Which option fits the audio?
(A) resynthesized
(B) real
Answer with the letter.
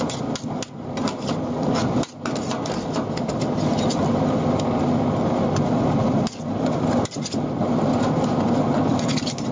B